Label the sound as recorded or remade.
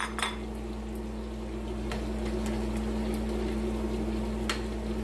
recorded